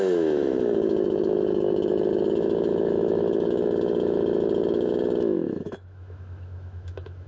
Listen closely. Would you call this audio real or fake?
fake